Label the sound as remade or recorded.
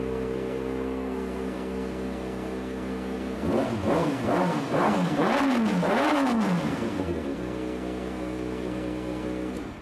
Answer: remade